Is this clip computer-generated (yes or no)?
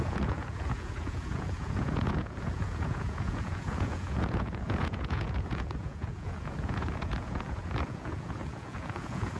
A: yes